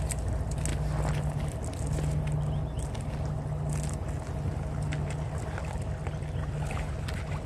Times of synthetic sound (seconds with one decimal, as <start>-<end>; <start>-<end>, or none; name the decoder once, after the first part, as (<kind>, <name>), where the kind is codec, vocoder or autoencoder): none